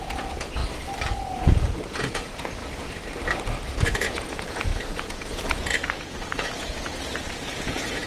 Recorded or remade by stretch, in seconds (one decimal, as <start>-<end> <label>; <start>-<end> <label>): 0.0-0.6 remade; 0.6-1.3 recorded; 1.3-2.6 remade; 2.6-3.7 recorded; 3.7-8.1 remade